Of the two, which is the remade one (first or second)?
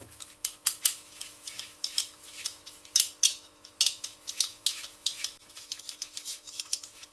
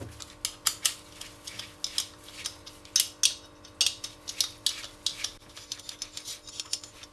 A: first